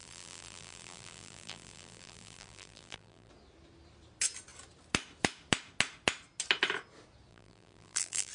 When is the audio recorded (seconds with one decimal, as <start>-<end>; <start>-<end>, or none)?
3.3-7.3

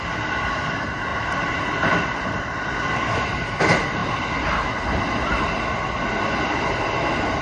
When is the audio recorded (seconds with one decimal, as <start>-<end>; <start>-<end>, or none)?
0.0-1.1; 3.1-7.4

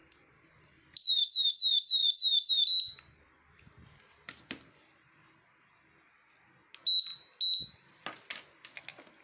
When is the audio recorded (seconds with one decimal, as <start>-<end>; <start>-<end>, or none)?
1.5-9.2